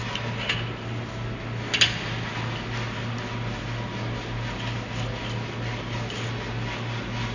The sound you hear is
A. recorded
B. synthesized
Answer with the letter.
A